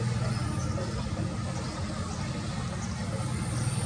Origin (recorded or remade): recorded